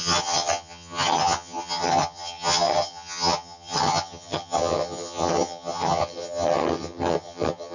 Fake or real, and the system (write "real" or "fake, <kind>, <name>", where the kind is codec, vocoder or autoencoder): fake, vocoder, HiFi-GAN